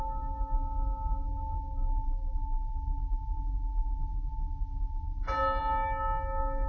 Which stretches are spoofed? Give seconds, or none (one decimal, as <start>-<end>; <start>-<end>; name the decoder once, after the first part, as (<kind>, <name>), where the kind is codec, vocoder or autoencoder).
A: none